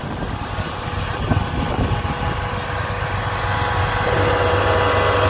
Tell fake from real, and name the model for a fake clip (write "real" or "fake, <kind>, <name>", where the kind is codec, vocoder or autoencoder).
real